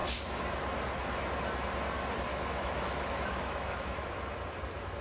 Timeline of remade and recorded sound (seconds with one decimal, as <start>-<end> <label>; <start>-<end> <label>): 0.0-2.3 recorded; 2.3-4.1 remade; 4.1-5.0 recorded